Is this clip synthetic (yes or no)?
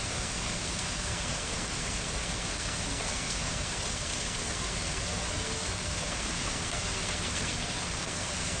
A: yes